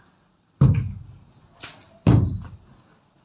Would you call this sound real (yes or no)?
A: yes